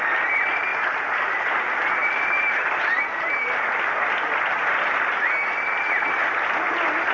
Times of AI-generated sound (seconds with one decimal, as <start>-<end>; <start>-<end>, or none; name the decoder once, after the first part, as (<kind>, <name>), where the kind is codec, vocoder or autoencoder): 2.0-2.8 (vocoder, BigVGAN v2)